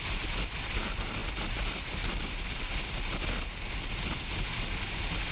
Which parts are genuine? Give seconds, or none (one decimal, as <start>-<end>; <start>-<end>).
0.0-5.3